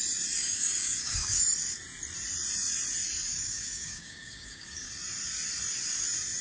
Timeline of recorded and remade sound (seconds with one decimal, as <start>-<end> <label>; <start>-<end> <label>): 0.0-0.4 recorded; 0.4-1.4 remade; 1.4-3.3 recorded; 3.3-4.9 remade; 4.9-6.4 recorded